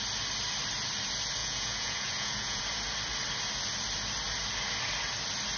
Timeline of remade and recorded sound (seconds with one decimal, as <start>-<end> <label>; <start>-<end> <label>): 0.0-1.4 recorded; 1.4-2.6 remade; 2.6-5.6 recorded